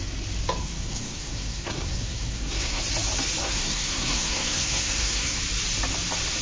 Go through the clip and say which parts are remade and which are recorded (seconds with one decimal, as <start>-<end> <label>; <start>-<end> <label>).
0.0-0.6 recorded; 0.6-2.8 remade; 2.8-3.4 recorded; 3.4-5.4 remade; 5.4-6.4 recorded